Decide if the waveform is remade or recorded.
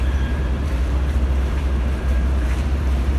remade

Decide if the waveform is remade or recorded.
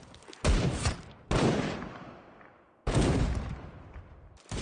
remade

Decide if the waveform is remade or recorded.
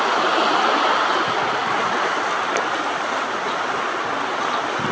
recorded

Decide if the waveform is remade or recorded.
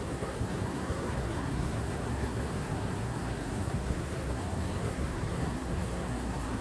remade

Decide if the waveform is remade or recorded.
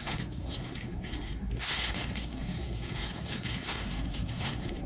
remade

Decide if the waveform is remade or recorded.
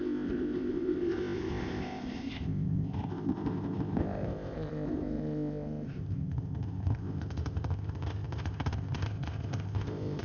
remade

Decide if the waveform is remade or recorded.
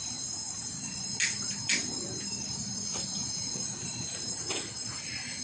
recorded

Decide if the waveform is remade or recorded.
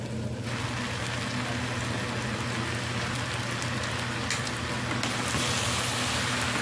recorded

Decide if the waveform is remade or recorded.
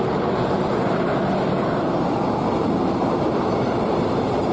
remade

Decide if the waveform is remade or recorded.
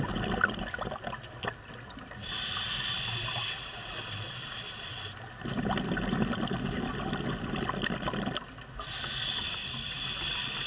recorded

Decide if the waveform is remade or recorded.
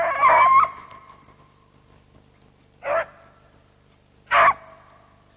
recorded